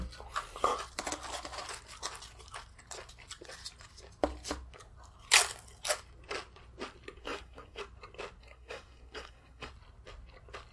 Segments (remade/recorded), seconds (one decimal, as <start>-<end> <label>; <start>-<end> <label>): 0.0-7.2 recorded; 7.2-7.8 remade; 7.8-8.4 recorded; 8.4-9.7 remade; 9.7-10.7 recorded